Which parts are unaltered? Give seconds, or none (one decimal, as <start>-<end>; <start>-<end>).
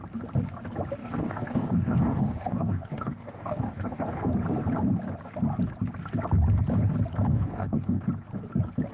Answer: 0.0-1.0; 4.3-7.3; 8.1-8.9